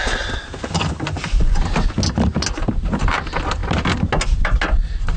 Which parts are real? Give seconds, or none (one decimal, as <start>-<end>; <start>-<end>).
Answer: 0.0-5.2